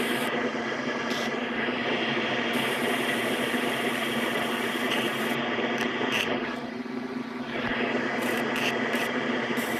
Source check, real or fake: fake